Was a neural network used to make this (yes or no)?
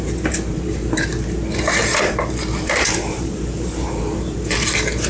yes